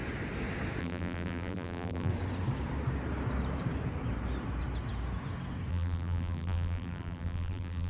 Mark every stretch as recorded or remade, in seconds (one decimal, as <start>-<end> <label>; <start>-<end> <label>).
0.0-0.8 recorded; 0.8-2.1 remade; 2.1-5.7 recorded; 5.7-7.9 remade